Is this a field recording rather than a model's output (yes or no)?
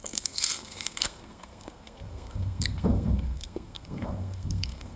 no